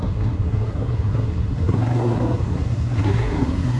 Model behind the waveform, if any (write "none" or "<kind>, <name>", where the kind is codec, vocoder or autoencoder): codec, SNAC